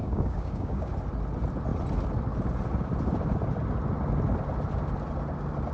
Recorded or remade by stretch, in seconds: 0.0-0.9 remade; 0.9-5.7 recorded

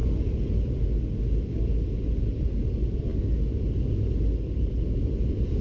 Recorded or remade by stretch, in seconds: 0.0-5.6 recorded

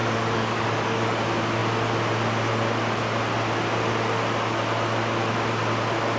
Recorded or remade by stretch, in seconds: 0.0-1.2 remade; 1.2-6.2 recorded